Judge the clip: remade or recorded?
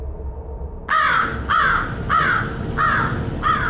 recorded